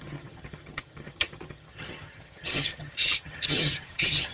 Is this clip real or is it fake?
fake